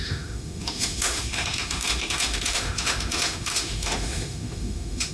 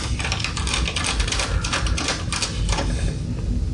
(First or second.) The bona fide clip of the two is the second